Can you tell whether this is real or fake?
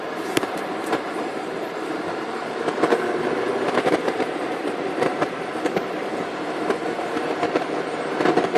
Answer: fake